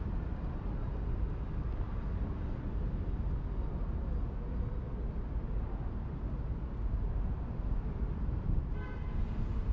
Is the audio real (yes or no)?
yes